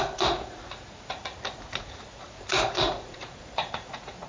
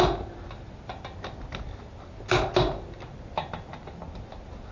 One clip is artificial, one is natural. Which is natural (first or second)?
second